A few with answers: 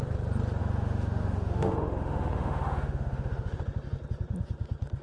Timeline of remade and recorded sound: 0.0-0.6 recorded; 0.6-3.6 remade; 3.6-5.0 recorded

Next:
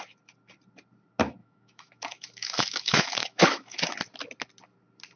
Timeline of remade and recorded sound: 0.0-1.4 recorded; 1.4-3.9 remade; 3.9-5.2 recorded